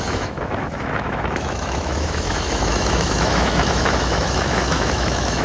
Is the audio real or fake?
fake